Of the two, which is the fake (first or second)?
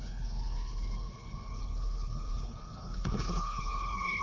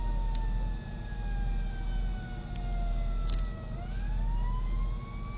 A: first